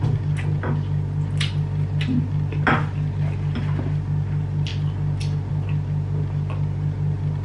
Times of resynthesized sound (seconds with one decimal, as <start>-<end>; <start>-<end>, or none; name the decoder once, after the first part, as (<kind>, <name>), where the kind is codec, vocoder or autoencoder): none